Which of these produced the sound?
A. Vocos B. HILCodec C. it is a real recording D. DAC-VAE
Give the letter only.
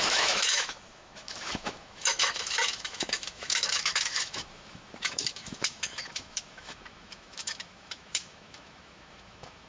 D